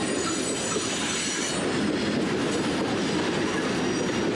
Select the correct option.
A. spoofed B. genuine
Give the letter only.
B